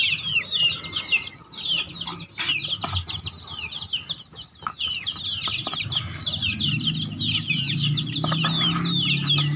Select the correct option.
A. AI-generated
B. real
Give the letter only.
B